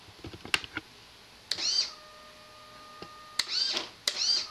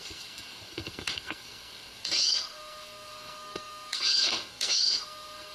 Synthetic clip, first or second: second